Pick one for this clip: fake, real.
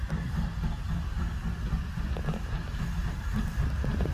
real